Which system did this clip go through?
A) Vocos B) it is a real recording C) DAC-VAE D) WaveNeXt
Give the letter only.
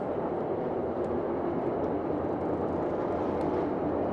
B